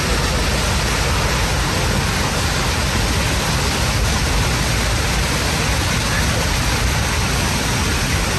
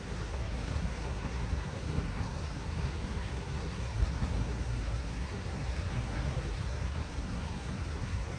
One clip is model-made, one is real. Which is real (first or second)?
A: first